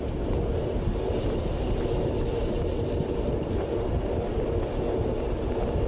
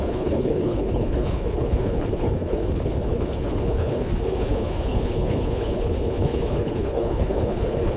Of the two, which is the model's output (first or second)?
second